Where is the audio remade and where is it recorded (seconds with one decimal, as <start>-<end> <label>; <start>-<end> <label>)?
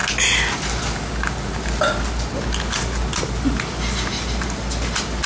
0.0-5.3 recorded